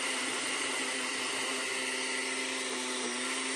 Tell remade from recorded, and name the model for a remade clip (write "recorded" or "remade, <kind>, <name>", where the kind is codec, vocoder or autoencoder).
recorded